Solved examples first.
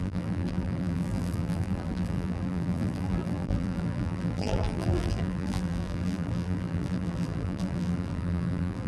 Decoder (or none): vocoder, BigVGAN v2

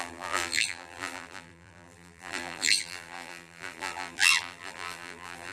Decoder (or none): vocoder, BigVGAN v2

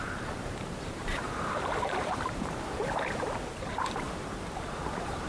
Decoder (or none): vocoder, BigVGAN v2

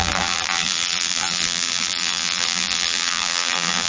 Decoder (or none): vocoder, BigVGAN v2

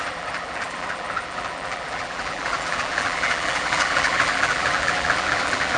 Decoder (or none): vocoder, BigVGAN v2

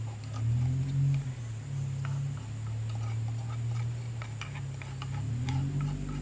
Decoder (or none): none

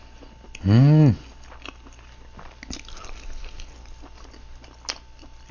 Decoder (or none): none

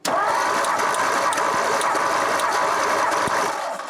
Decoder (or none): vocoder, BigVGAN v2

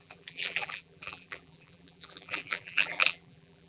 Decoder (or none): vocoder, BigVGAN v2